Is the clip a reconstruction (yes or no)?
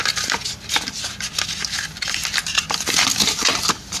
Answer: no